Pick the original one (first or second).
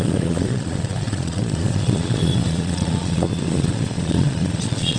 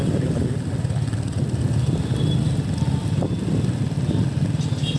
second